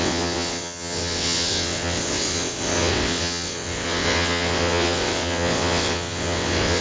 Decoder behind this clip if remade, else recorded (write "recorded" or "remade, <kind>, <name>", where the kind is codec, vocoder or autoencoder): remade, vocoder, WaveNeXt